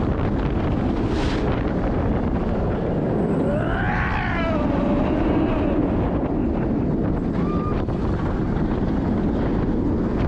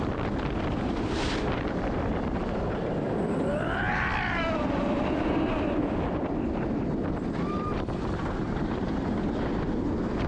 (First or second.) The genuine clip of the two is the first